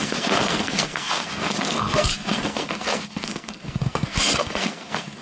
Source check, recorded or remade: remade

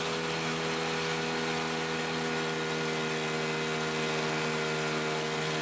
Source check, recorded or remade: recorded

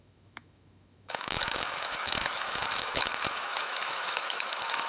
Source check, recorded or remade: remade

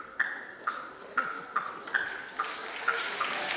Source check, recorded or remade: recorded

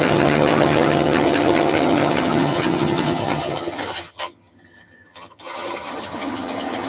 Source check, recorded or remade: remade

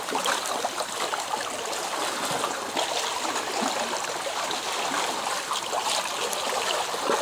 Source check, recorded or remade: recorded